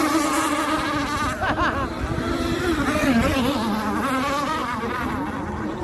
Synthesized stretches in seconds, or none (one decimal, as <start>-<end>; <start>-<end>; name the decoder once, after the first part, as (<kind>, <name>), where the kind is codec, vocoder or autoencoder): 4.6-5.1 (vocoder, BigVGAN v2)